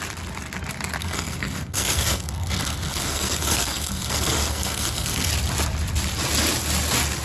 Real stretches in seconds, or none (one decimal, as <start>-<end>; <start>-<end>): 0.0-1.0; 5.3-7.2